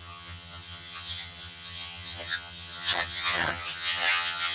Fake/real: fake